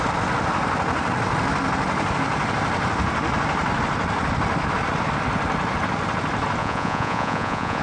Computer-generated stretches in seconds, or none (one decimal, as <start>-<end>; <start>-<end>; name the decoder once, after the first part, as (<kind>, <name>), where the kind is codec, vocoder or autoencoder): 6.6-7.8 (vocoder, Vocos)